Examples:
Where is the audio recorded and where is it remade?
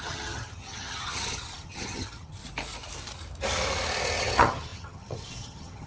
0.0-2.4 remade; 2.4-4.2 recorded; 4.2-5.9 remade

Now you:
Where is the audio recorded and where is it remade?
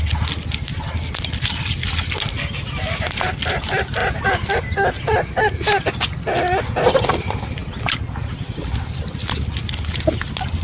0.0-10.6 recorded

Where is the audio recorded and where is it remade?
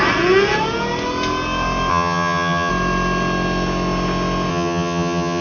0.0-1.9 recorded; 1.9-2.7 remade; 2.7-4.5 recorded; 4.5-5.4 remade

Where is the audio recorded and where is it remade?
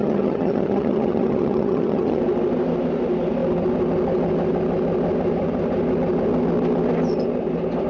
0.0-2.2 remade; 2.2-7.9 recorded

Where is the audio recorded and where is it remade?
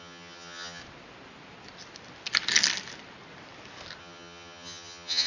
0.0-0.8 remade; 0.8-4.0 recorded; 4.0-5.3 remade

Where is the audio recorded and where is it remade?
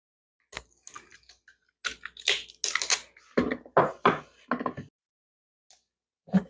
0.0-6.5 recorded